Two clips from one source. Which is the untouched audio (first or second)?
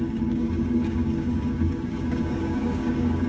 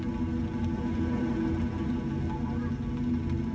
second